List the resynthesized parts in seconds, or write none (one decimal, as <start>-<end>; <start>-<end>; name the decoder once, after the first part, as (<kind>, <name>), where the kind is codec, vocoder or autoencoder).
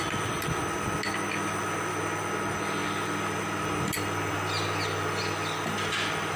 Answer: none